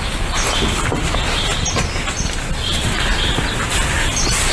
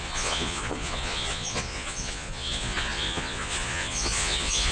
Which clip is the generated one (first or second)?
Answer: second